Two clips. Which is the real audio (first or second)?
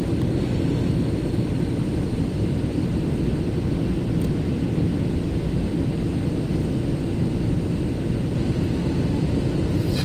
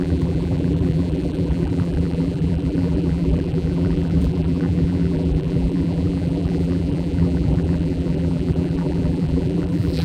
first